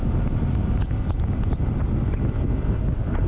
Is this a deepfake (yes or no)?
no